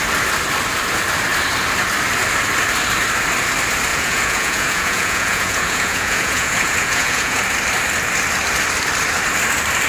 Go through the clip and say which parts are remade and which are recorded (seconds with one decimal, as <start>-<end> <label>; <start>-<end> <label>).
0.0-3.9 recorded; 3.9-7.4 remade; 7.4-9.9 recorded